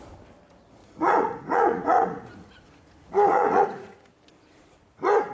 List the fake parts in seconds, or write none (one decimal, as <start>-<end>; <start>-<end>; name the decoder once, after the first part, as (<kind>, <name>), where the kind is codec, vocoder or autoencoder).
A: 0.8-4.0 (vocoder, Vocos)